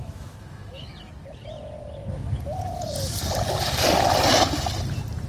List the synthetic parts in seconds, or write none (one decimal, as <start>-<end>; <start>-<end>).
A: 0.0-1.1